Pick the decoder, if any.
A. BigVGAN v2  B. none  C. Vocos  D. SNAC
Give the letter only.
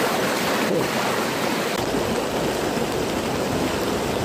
B